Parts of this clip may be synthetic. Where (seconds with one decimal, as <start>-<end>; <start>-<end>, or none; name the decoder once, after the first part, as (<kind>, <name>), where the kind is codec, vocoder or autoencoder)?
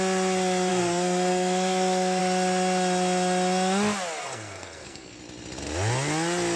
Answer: 0.7-2.2 (codec, SNAC); 4.2-5.2